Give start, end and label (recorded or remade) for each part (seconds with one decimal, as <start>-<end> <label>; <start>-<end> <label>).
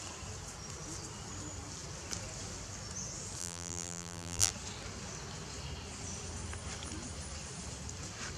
0.0-3.4 recorded; 3.4-4.5 remade; 4.5-8.4 recorded